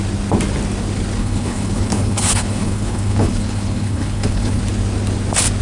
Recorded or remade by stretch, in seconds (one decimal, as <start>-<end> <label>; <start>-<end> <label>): 0.0-1.2 recorded; 1.2-4.6 remade; 4.6-5.6 recorded